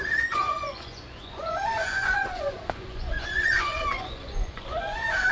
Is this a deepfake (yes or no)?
yes